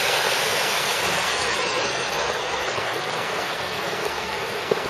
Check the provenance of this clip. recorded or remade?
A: remade